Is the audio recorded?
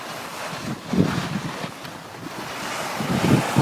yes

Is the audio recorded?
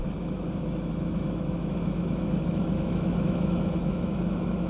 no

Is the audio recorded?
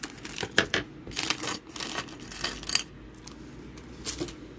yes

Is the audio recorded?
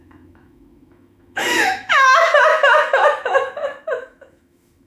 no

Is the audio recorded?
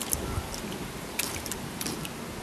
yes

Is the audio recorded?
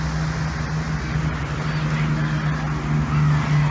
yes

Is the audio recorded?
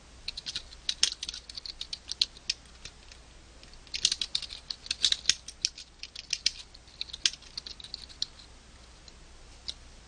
yes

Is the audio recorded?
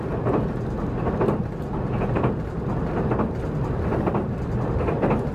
yes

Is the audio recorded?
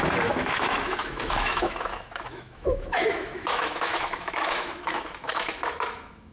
no